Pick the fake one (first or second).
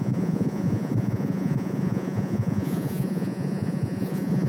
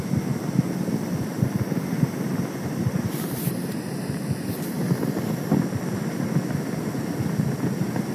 first